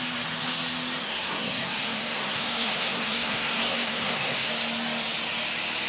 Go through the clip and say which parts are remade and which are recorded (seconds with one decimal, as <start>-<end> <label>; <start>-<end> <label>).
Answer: 0.0-1.0 recorded; 1.0-4.5 remade; 4.5-5.9 recorded